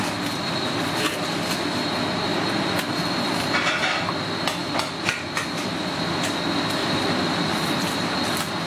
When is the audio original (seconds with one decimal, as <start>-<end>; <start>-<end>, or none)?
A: 0.0-2.3; 3.8-4.6; 5.1-6.8; 8.2-8.7